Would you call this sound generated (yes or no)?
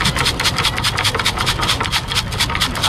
no